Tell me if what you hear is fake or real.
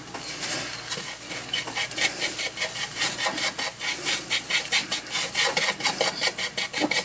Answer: real